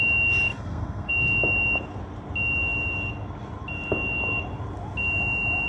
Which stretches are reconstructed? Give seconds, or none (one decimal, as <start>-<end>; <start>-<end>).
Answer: 0.5-1.1